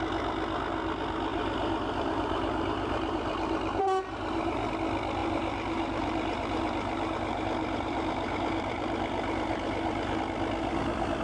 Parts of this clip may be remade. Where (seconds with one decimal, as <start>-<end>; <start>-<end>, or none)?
1.3-4.7; 5.2-10.2